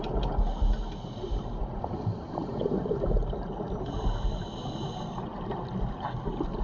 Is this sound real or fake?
real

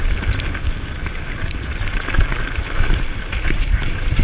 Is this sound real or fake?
real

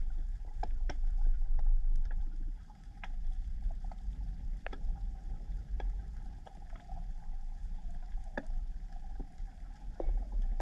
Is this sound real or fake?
fake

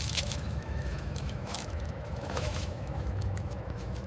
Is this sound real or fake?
fake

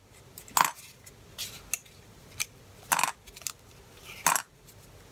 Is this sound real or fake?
real